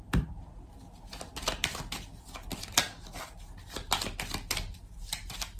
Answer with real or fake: real